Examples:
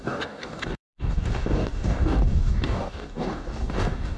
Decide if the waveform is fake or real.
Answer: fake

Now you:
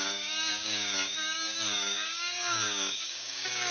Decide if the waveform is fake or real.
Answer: fake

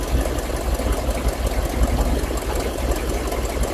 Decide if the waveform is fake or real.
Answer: real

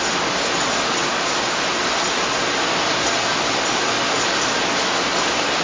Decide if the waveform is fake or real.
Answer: real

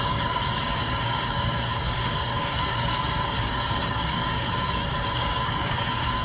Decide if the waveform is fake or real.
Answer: fake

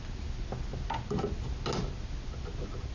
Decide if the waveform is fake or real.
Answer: real